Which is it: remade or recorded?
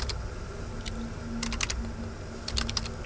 recorded